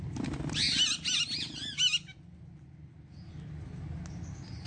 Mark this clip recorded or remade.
recorded